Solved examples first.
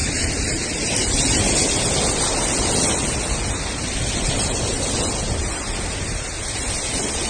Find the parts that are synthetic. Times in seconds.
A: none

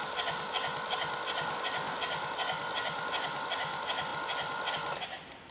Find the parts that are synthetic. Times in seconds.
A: none

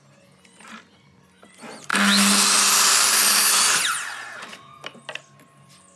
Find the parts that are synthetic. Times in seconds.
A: none

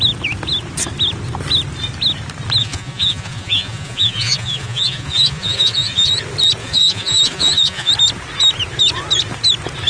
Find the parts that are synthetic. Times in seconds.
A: 2.6-6.1 (vocoder, Vocos); 6.6-7.9